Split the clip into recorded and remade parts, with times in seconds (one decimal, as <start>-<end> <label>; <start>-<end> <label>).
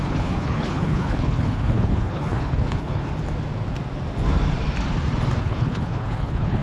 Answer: 0.0-3.1 remade; 3.1-5.4 recorded; 5.4-6.6 remade